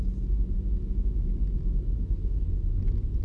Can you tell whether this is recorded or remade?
recorded